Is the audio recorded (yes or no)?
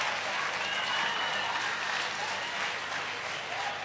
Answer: yes